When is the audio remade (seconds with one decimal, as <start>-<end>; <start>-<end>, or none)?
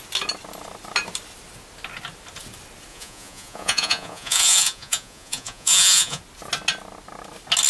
2.9-6.2